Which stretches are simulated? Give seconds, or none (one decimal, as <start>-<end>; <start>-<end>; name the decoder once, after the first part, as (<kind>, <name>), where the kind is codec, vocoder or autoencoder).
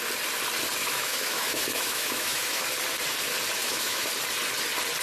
0.8-2.6 (autoencoder, DAC-VAE); 3.6-4.1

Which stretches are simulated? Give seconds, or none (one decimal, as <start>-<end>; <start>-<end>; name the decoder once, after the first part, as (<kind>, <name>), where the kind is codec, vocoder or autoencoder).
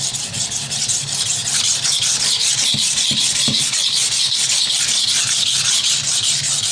none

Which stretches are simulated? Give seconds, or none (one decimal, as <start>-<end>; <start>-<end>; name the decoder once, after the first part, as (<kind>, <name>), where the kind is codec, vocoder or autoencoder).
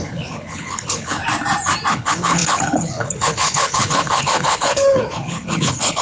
0.0-1.2 (codec, HILCodec); 1.9-6.0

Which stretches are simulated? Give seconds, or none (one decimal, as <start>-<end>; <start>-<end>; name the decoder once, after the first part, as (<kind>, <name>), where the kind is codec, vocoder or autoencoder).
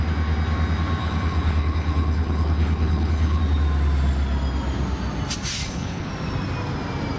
1.0-3.4 (codec, HILCodec); 5.6-6.1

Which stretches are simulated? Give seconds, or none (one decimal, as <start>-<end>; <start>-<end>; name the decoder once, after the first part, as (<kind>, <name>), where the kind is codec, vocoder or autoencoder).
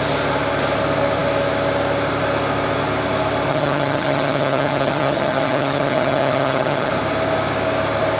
3.5-6.9 (vocoder, HiFi-GAN)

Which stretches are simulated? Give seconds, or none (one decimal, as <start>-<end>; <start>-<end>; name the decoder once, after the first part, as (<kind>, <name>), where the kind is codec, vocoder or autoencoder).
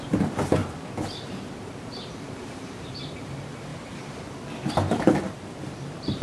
0.0-0.6 (vocoder, BigVGAN v2); 1.6-3.7; 4.7-6.2